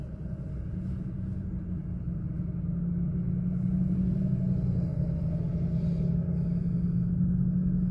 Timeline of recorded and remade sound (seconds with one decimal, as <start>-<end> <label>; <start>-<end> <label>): 0.0-7.9 recorded